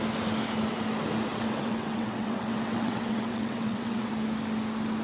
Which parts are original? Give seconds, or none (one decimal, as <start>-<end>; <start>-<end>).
0.0-1.3; 4.1-5.0